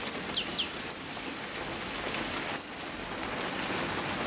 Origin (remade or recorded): recorded